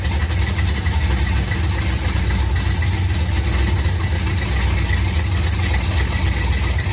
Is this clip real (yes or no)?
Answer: yes